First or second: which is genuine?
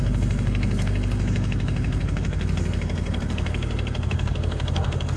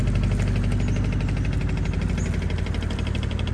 second